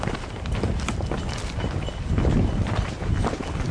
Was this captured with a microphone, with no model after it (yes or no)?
yes